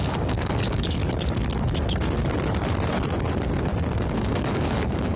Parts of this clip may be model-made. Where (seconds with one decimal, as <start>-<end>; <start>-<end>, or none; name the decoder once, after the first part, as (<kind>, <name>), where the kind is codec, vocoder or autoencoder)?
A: 0.0-1.0 (codec, DAC); 4.1-5.2